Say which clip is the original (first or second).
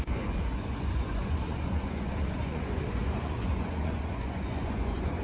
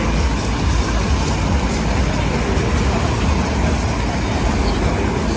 second